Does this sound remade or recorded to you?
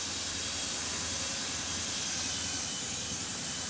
recorded